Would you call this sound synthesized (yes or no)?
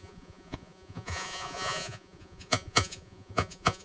yes